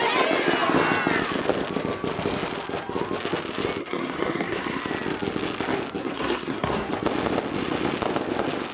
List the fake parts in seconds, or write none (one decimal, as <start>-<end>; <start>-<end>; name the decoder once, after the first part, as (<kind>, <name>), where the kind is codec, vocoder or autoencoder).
3.8-4.8 (codec, SNAC); 6.0-6.9